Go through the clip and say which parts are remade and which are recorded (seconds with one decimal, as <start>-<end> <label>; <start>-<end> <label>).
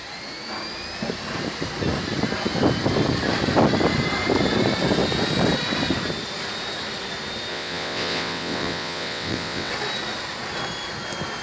0.0-7.5 recorded; 7.5-9.7 remade; 9.7-11.4 recorded